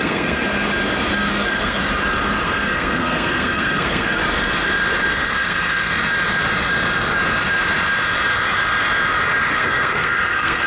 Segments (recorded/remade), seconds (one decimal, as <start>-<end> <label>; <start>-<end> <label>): 0.0-0.4 remade; 0.4-1.3 recorded; 1.3-1.8 remade; 1.8-2.4 recorded; 2.4-4.2 remade; 4.2-5.1 recorded; 5.1-5.9 remade; 5.9-9.5 recorded; 9.5-10.7 remade